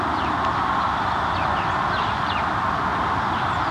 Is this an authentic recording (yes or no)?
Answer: yes